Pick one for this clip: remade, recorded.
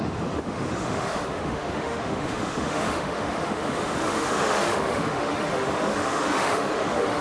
remade